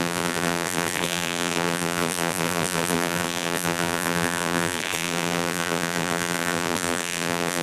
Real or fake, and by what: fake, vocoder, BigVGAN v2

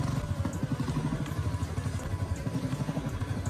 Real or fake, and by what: real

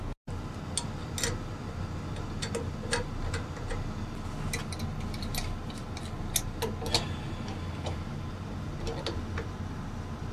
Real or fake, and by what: real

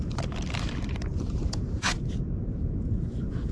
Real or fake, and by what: fake, vocoder, BigVGAN v2